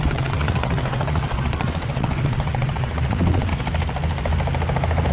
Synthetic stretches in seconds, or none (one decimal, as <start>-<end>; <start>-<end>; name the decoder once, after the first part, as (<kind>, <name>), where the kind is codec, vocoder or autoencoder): 0.0-3.5 (vocoder, WaveNeXt)